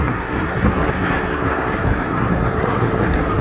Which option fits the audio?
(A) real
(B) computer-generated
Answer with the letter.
B